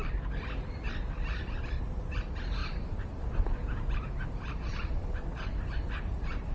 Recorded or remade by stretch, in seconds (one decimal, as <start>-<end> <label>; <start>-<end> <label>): 0.0-2.6 recorded; 2.6-6.5 remade